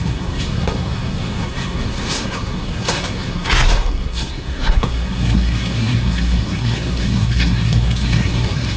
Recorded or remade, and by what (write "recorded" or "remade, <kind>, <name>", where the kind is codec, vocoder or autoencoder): remade, codec, SNAC